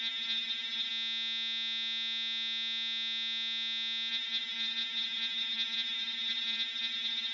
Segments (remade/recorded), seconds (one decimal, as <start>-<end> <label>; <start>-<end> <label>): 0.0-0.9 remade; 0.9-4.1 recorded; 4.1-7.3 remade